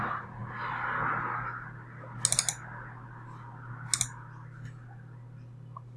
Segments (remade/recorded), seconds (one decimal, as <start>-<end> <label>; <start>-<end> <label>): 0.0-6.0 recorded